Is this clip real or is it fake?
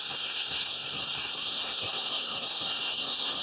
fake